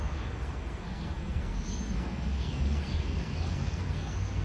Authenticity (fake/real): fake